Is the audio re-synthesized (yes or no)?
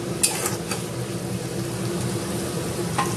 no